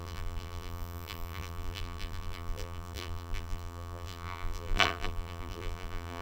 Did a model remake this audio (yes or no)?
yes